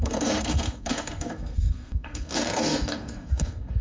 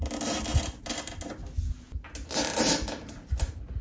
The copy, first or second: first